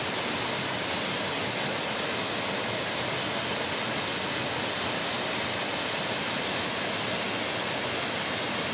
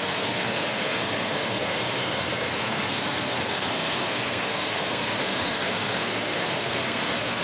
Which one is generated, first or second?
second